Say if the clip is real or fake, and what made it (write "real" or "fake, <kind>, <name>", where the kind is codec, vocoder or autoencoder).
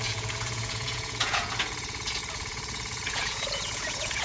fake, vocoder, Vocos